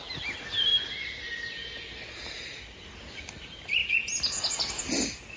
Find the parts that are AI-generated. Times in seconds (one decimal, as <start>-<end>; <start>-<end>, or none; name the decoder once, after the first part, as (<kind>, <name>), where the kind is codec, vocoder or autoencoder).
none

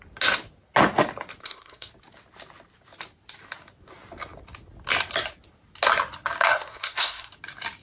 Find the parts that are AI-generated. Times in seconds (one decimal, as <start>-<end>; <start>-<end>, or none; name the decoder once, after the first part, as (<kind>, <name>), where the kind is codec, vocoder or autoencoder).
1.4-1.9 (codec, SNAC); 6.5-7.3

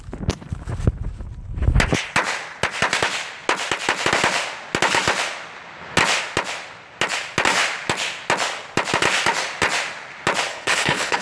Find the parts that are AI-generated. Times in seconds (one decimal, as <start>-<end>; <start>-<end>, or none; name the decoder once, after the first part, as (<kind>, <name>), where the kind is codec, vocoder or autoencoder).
10.5-11.2 (codec, HILCodec)

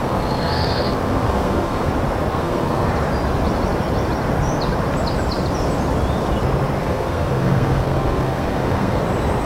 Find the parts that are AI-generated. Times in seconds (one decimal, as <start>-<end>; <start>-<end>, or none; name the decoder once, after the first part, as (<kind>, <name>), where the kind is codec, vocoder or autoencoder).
0.0-1.9 (codec, SNAC); 2.3-2.9; 6.8-9.0

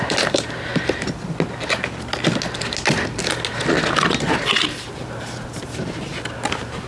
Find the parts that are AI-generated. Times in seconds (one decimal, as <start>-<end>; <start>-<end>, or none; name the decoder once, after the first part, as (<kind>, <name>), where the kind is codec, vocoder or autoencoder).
0.0-0.7 (vocoder, BigVGAN v2); 4.8-6.1

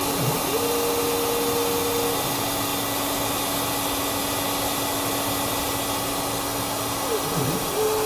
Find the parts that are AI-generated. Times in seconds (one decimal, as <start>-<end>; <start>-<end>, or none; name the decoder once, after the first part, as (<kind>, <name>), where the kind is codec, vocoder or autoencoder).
none

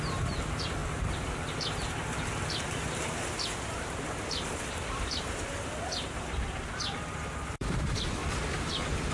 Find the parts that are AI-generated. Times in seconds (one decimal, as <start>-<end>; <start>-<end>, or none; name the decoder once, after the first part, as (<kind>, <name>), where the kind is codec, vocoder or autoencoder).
0.0-0.8 (vocoder, BigVGAN v2); 4.6-8.2

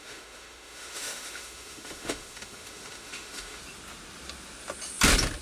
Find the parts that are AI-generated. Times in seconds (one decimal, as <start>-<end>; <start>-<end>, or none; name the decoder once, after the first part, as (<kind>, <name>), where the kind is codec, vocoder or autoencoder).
0.0-3.6 (autoencoder, DAC-VAE)